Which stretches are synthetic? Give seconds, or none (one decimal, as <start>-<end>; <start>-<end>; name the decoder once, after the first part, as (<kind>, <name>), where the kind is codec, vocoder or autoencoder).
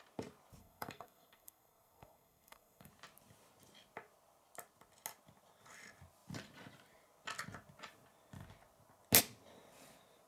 0.6-2.9 (codec, SNAC)